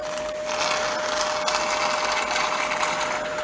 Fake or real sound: real